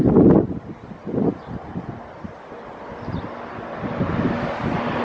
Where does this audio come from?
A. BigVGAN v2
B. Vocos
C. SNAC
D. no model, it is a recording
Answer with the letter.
D